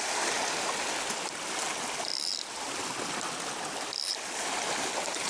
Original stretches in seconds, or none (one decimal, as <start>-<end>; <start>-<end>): 0.0-2.1; 4.7-5.3